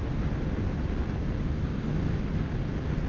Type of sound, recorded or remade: recorded